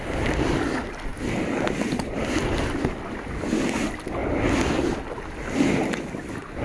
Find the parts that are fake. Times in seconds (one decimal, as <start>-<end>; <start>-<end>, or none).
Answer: none